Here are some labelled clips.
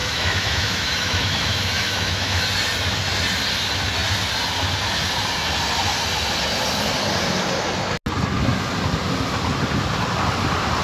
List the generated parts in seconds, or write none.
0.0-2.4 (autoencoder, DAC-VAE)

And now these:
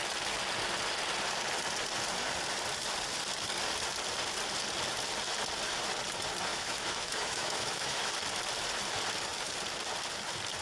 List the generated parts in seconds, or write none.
6.5-8.1 (autoencoder, DAC-VAE)